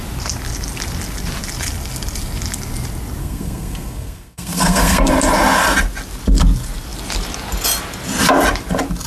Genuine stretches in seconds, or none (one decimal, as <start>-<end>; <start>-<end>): 0.0-3.2; 5.1-9.1